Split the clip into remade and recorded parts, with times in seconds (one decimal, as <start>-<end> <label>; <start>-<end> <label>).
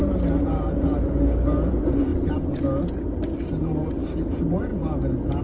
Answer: 0.0-2.1 remade; 2.1-3.5 recorded; 3.5-4.7 remade; 4.7-5.4 recorded